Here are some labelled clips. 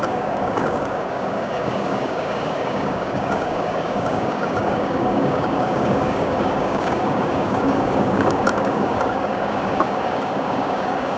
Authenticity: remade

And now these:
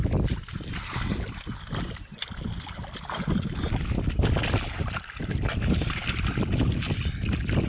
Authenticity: recorded